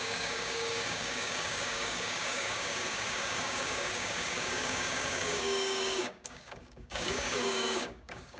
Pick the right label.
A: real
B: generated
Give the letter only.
B